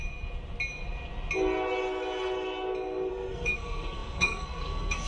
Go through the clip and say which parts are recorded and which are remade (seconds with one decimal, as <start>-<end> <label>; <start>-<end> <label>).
0.0-3.1 recorded; 3.1-5.1 remade